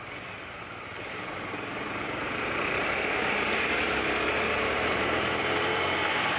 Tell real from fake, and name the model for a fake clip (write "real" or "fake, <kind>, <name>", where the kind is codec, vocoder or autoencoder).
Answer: fake, vocoder, BigVGAN v2